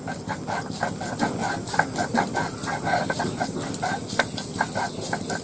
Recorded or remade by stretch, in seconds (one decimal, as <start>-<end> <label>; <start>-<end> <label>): 0.0-5.4 recorded